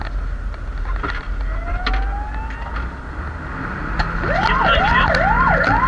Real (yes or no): yes